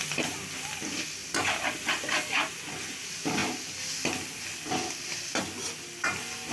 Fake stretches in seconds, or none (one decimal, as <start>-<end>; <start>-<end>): none